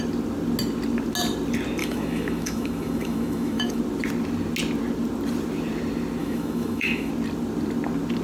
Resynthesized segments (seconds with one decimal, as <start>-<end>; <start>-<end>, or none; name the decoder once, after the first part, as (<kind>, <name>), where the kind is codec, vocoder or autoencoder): 1.8-3.8 (autoencoder, DAC-VAE); 6.2-7.1